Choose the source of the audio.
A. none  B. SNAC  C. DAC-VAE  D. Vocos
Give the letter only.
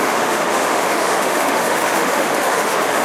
C